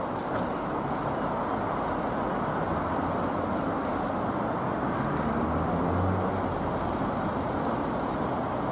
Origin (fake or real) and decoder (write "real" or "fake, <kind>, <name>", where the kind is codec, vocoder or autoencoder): real